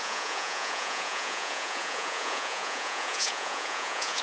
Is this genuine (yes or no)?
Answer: no